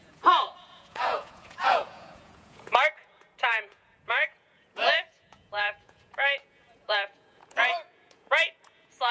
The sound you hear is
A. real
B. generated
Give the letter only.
B